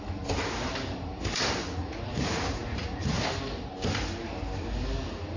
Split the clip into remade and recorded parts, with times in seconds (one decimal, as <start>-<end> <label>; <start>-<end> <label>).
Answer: 0.0-1.6 recorded; 1.6-3.0 remade; 3.0-5.4 recorded